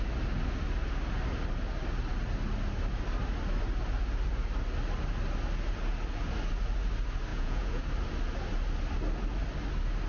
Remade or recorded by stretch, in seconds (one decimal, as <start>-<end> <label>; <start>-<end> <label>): 0.0-7.3 recorded; 7.3-7.8 remade; 7.8-10.1 recorded